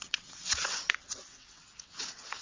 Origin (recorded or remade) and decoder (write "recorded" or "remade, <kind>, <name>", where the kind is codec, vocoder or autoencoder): remade, vocoder, WaveNeXt